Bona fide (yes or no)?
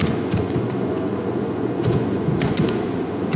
no